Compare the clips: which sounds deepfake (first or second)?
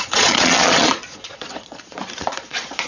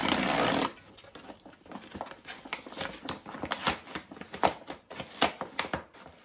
first